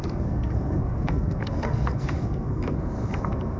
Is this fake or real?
fake